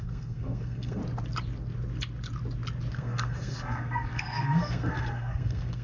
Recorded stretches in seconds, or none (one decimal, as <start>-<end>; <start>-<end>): 1.0-2.9

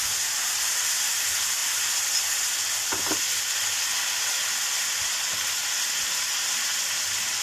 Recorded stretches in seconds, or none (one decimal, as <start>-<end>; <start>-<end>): 0.0-7.4

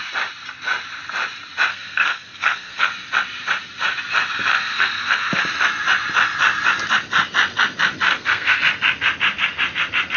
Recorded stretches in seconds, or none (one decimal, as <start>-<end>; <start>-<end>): 0.0-1.7; 2.9-4.5; 5.4-8.1; 8.6-10.2

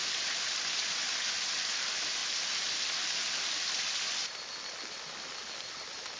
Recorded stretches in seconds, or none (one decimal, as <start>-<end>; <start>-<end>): 0.0-6.2

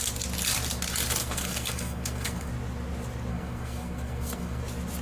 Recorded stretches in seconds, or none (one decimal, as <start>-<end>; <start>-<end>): 0.0-1.2; 2.5-3.3; 4.6-5.0

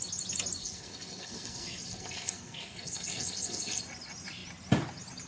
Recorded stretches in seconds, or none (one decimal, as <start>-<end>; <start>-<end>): 0.0-0.6; 3.8-5.3